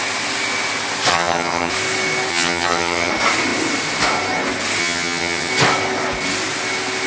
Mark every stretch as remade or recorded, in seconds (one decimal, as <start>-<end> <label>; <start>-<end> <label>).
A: 0.0-1.1 recorded; 1.1-1.7 remade; 1.7-2.3 recorded; 2.3-3.1 remade; 3.1-4.8 recorded; 4.8-5.5 remade; 5.5-7.1 recorded